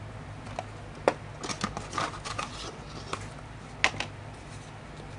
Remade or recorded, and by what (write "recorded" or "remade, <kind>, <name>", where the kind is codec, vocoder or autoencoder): recorded